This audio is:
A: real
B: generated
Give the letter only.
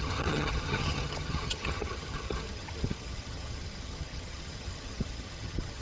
B